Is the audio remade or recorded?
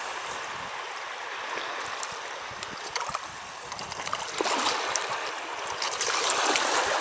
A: recorded